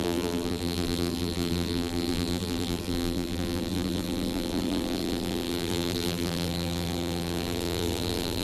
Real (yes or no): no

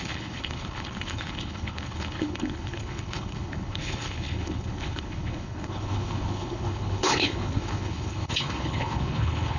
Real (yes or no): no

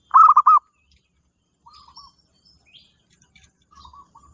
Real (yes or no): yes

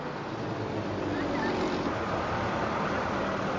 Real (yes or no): yes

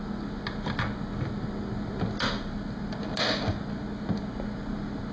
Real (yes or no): yes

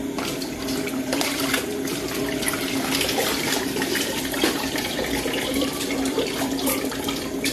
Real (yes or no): no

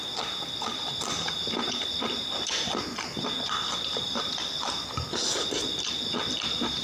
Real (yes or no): yes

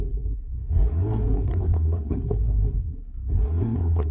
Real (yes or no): no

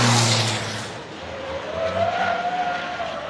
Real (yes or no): yes